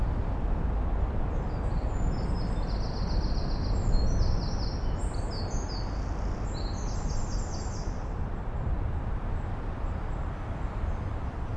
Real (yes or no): yes